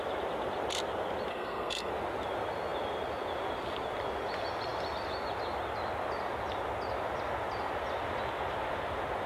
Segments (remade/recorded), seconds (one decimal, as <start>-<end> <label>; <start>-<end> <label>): 0.0-1.3 recorded; 1.3-1.9 remade; 1.9-9.3 recorded

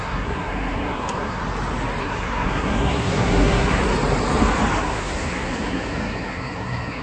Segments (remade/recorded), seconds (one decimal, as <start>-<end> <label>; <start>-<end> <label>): 0.0-1.4 remade; 1.4-2.0 recorded; 2.0-3.8 remade; 3.8-4.8 recorded; 4.8-7.0 remade